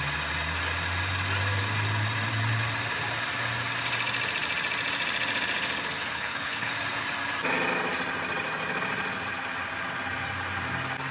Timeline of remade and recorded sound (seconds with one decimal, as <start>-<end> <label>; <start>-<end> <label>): 0.0-6.1 recorded; 6.1-6.7 remade; 6.7-11.1 recorded